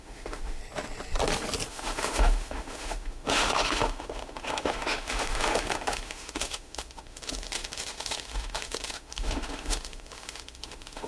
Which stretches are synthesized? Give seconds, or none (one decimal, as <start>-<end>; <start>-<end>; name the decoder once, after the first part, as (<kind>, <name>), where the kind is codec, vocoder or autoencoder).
0.0-0.6 (autoencoder, DAC-VAE); 1.7-11.1